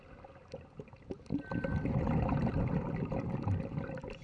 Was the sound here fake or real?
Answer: real